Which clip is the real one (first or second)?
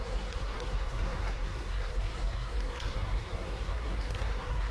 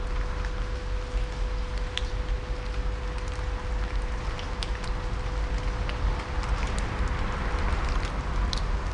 second